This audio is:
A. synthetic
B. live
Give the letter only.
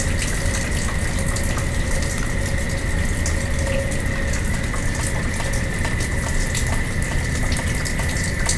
B